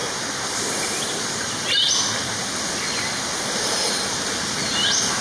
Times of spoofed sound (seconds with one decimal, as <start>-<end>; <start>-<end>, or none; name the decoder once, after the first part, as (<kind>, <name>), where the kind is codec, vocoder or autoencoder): none